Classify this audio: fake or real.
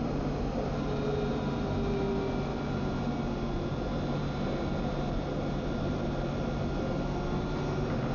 real